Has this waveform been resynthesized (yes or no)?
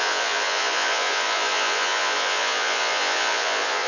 yes